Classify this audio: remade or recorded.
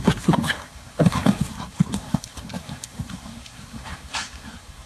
remade